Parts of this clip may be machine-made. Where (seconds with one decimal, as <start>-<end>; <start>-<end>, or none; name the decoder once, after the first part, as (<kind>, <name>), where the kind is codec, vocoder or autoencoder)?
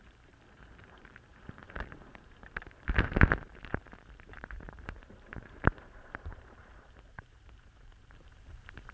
0.0-8.9 (vocoder, BigVGAN v2)